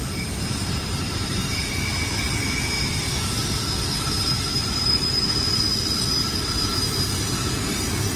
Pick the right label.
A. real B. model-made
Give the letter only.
A